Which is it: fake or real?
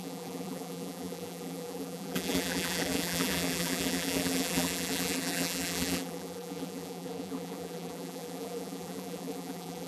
fake